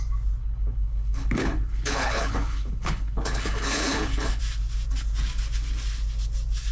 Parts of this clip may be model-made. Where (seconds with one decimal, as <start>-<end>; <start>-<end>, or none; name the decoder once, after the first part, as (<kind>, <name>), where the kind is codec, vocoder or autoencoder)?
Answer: 0.4-4.4 (codec, HILCodec)